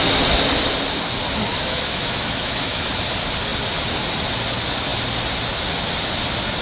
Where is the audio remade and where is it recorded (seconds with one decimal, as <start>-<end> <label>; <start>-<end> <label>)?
0.0-1.5 recorded; 1.5-2.8 remade; 2.8-6.6 recorded